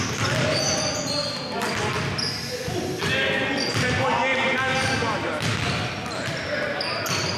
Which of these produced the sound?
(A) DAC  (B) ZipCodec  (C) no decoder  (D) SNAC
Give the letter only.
C